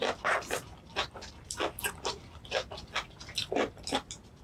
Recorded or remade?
recorded